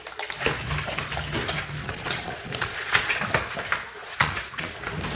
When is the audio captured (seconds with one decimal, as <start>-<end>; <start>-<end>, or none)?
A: 0.0-1.8; 3.2-4.0; 4.8-5.2